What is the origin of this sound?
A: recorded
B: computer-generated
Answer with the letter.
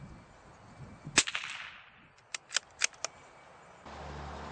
A